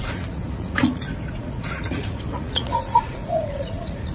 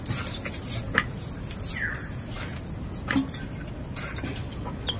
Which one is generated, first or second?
first